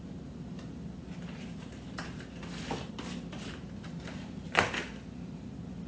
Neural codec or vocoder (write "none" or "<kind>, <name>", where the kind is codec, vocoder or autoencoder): none